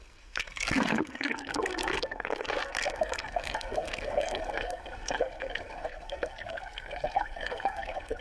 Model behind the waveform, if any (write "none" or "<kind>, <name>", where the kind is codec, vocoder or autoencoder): codec, SNAC